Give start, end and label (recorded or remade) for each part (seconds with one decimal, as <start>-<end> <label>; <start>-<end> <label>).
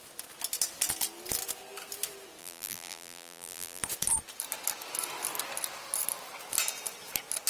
0.0-2.4 recorded; 2.4-3.8 remade; 3.8-7.5 recorded